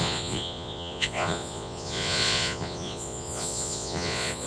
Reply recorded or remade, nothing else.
remade